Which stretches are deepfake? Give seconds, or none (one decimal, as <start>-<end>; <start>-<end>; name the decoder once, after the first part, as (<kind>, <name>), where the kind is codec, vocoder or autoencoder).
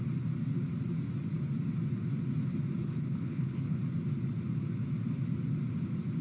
2.8-3.8 (codec, HILCodec)